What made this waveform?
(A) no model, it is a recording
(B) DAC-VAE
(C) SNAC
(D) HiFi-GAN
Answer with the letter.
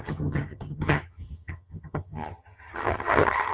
D